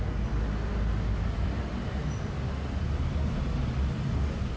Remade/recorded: recorded